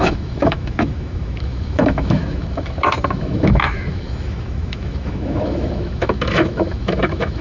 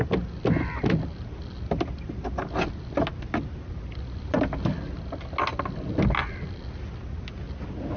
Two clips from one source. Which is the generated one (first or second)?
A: first